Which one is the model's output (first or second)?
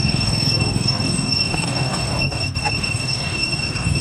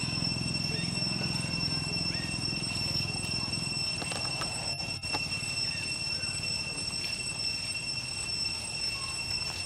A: first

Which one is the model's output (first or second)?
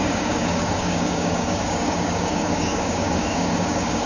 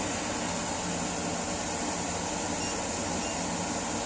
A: first